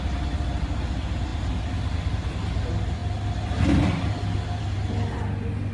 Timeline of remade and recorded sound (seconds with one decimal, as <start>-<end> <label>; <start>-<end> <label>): 0.0-5.7 recorded